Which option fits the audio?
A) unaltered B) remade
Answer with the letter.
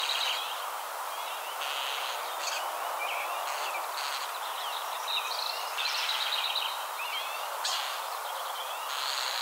A